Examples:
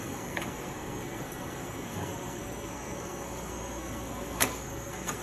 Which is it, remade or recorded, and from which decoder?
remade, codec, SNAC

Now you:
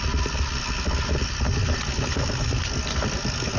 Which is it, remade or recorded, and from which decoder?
recorded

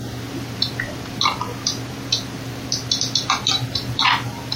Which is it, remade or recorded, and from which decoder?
remade, vocoder, BigVGAN v2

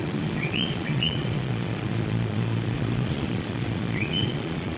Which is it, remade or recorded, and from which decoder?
remade, vocoder, Vocos